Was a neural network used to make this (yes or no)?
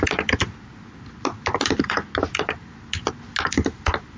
no